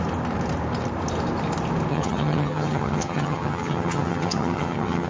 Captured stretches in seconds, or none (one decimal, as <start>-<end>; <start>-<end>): 0.0-1.9